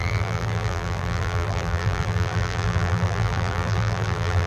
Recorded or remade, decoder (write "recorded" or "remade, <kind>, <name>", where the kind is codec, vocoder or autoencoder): remade, vocoder, BigVGAN v2